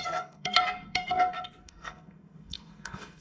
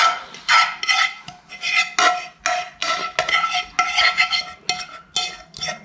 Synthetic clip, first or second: first